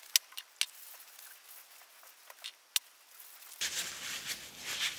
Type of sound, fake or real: real